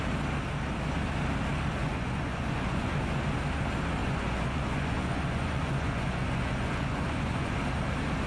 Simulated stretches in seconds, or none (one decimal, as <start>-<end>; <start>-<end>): 1.8-3.2; 4.0-7.6